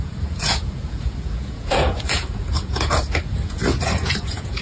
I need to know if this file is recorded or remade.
remade